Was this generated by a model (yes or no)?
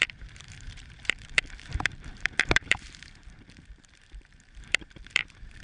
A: yes